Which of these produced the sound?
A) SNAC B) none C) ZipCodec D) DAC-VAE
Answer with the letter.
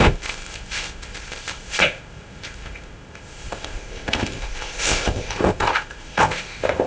C